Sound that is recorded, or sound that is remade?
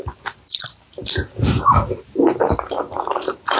recorded